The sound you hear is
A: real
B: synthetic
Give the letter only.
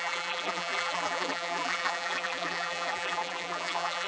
B